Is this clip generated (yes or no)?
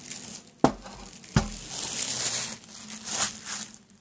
no